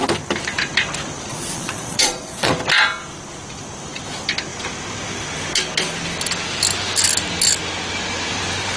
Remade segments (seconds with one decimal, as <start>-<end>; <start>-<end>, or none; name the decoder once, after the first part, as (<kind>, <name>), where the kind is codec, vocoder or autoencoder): 1.3-2.5 (vocoder, Vocos)